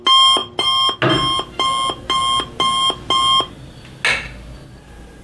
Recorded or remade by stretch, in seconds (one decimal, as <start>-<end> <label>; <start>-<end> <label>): 0.0-5.2 recorded